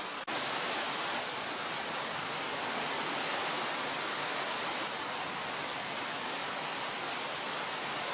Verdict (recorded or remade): recorded